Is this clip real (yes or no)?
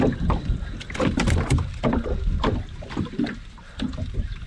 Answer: yes